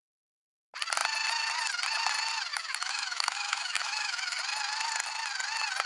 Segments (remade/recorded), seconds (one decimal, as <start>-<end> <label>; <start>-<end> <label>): 0.0-2.5 recorded; 2.5-4.4 remade; 4.4-5.9 recorded